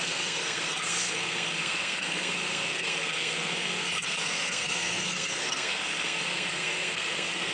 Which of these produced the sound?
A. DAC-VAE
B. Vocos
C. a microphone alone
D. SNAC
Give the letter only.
D